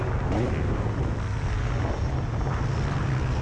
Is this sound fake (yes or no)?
no